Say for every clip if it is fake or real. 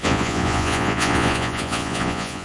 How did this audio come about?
fake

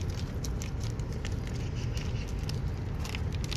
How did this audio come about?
real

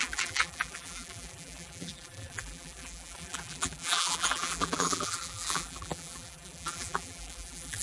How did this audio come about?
fake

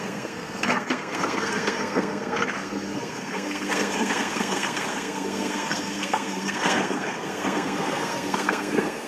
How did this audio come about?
fake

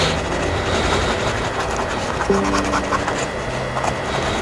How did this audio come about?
real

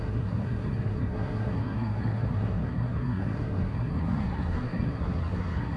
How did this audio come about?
fake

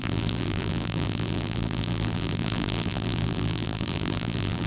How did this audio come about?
fake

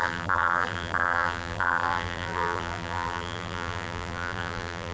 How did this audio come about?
fake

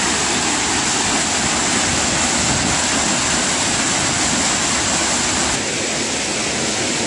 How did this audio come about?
real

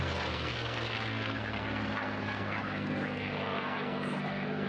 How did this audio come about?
fake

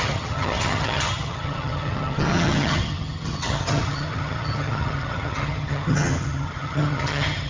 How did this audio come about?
fake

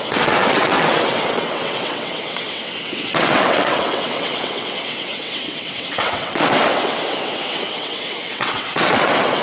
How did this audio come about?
fake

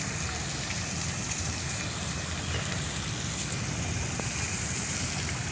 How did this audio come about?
real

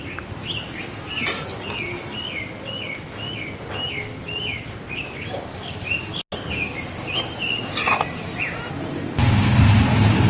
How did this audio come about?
real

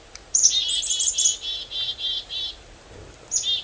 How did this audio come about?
real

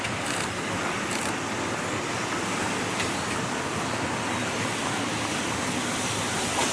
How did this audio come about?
real